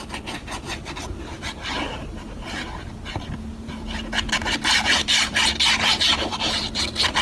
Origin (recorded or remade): remade